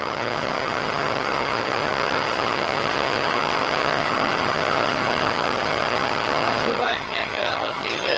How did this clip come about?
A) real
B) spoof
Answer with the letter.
B